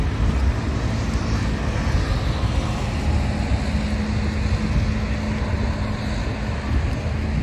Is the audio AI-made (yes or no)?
no